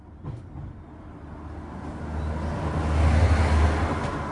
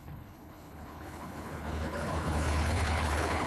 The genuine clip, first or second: first